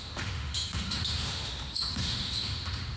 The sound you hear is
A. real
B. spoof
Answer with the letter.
B